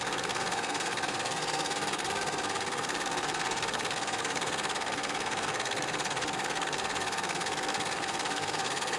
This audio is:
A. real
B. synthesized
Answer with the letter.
B